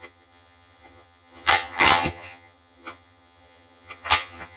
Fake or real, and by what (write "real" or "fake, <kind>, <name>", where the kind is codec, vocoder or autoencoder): fake, vocoder, HiFi-GAN